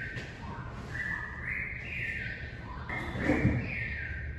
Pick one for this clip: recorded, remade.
recorded